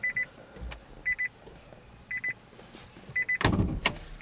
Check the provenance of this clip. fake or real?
real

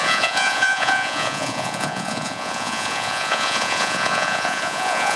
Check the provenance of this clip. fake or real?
fake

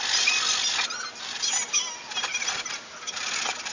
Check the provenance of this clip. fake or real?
real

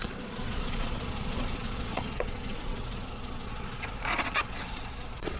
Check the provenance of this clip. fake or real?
fake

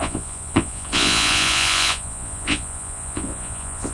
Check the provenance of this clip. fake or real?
fake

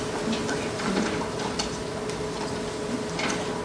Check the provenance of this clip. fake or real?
real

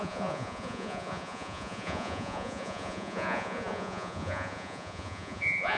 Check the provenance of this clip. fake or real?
fake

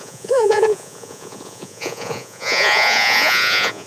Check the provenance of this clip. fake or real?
fake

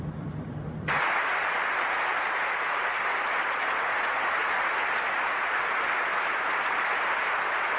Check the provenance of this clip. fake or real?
real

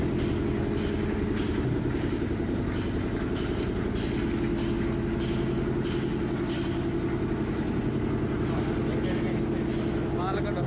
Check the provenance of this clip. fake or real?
real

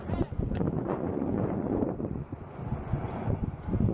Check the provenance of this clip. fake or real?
fake